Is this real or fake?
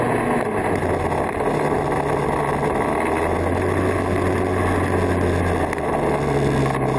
real